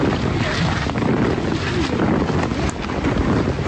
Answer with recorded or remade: recorded